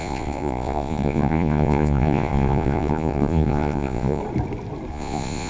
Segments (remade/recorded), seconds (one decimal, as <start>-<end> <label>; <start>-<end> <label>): 0.0-4.2 remade; 4.2-4.9 recorded; 4.9-5.5 remade